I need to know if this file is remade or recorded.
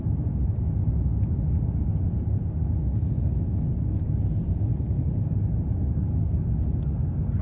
recorded